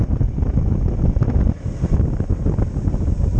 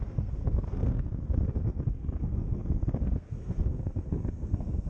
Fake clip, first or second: second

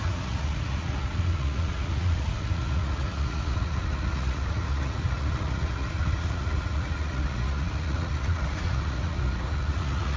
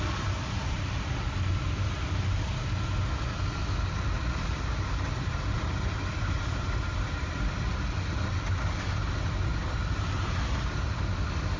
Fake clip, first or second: first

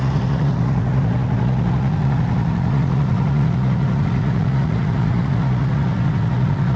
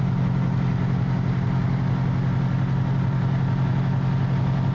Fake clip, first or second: first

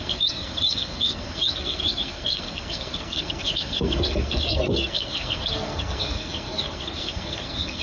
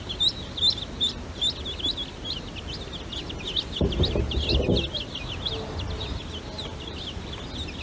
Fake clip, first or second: first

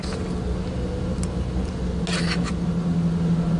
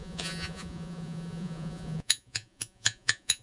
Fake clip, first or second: second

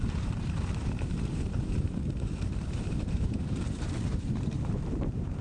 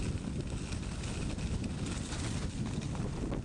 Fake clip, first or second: first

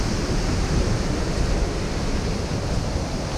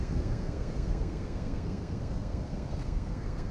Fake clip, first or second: second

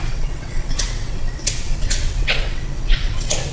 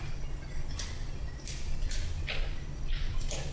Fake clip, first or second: first